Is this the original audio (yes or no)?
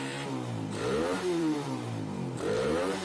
no